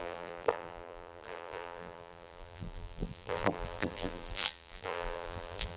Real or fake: fake